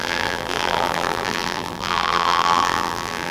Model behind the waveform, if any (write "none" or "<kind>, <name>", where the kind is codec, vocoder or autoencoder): vocoder, BigVGAN v2